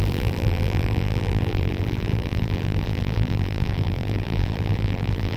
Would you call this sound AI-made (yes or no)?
yes